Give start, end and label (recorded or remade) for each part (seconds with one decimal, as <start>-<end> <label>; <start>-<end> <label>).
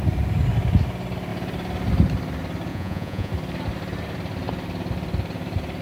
0.0-2.7 recorded; 2.7-3.3 remade; 3.3-5.8 recorded